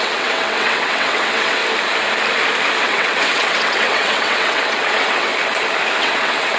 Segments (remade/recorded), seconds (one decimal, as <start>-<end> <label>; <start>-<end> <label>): 0.0-1.6 remade; 1.6-2.8 recorded; 2.8-5.3 remade; 5.3-6.0 recorded; 6.0-6.6 remade